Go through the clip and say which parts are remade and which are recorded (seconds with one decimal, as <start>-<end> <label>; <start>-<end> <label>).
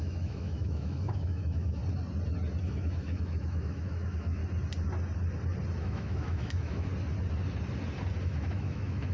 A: 0.0-1.8 remade; 1.8-2.6 recorded; 2.6-4.4 remade; 4.4-5.8 recorded; 5.8-6.9 remade; 6.9-8.2 recorded; 8.2-9.1 remade